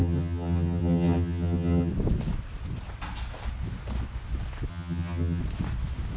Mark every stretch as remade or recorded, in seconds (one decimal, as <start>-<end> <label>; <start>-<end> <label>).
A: 0.0-1.9 remade; 1.9-4.7 recorded; 4.7-5.4 remade; 5.4-6.2 recorded